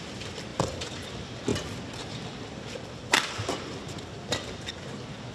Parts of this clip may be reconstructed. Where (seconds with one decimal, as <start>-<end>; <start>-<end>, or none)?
0.5-1.1; 1.5-4.7